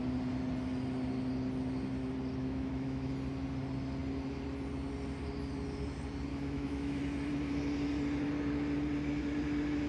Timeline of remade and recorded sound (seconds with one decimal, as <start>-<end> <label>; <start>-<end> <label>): 0.0-2.4 recorded; 2.4-3.1 remade; 3.1-6.3 recorded; 6.3-7.0 remade; 7.0-9.9 recorded